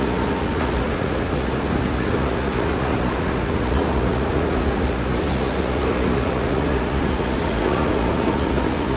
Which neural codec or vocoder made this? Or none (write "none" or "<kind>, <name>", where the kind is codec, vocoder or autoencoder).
vocoder, Vocos